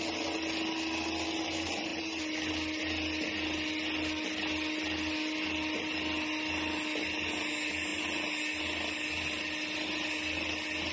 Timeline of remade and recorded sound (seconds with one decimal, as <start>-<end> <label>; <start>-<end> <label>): 0.0-10.9 recorded